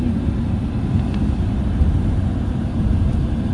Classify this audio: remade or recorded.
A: recorded